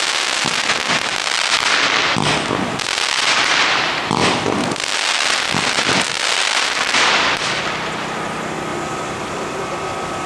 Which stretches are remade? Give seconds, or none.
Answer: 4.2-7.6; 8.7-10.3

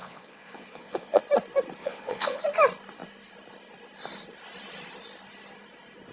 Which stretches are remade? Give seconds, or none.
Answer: 0.0-1.2; 1.8-2.4